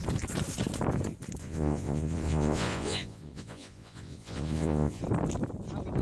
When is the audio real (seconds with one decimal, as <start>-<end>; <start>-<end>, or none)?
0.0-1.4; 5.0-6.0